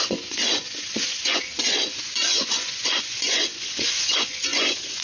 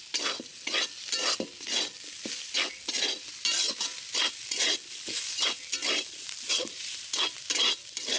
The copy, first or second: first